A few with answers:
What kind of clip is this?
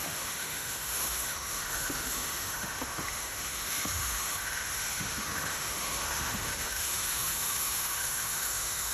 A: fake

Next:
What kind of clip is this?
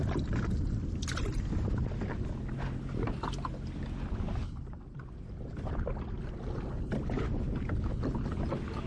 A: real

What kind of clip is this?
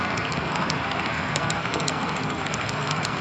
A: fake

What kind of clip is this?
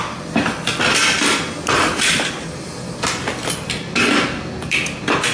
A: real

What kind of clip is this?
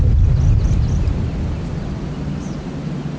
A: real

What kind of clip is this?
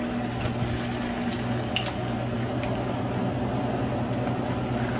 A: real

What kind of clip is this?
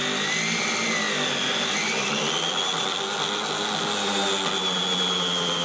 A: real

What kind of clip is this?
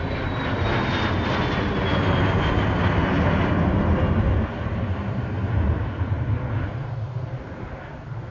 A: real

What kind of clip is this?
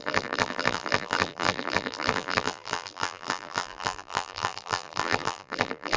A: fake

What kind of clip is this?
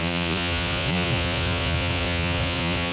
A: fake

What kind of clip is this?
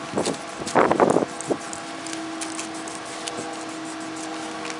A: real